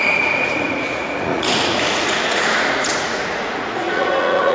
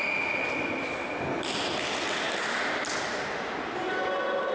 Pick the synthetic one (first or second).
first